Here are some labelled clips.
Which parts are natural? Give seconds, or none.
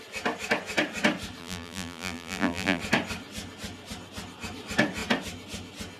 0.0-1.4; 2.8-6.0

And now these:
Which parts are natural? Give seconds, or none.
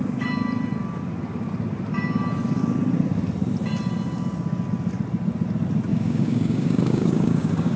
0.0-5.9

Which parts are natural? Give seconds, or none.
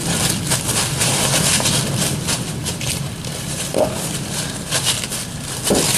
0.0-1.5; 5.1-6.0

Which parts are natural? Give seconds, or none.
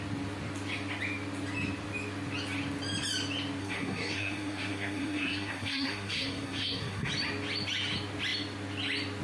0.0-3.6; 7.1-9.2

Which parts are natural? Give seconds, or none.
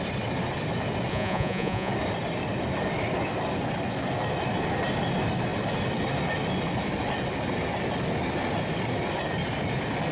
0.0-1.1; 1.9-10.1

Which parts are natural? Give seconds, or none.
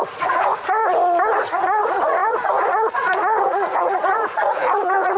0.8-1.4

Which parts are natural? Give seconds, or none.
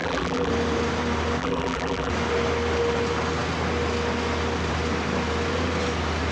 0.5-1.4; 2.1-6.3